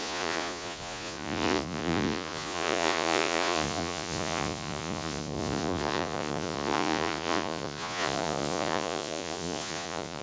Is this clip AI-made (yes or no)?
yes